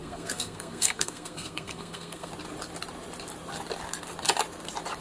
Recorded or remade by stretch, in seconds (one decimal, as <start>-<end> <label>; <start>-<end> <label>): 0.0-2.3 remade; 2.3-5.0 recorded